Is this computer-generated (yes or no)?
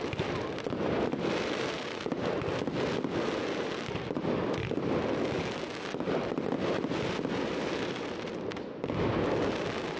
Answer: no